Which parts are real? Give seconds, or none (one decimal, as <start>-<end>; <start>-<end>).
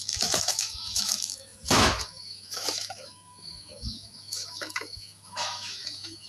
none